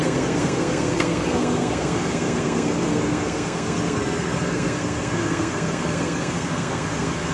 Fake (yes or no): yes